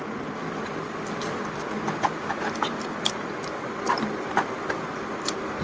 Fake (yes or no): no